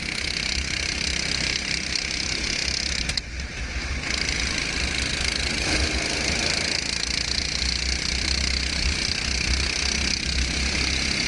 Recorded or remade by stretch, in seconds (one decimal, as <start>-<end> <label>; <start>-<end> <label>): 0.0-11.3 recorded